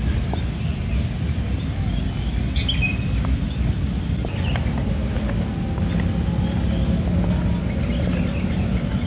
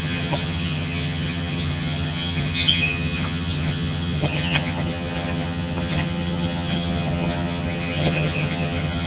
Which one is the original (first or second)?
first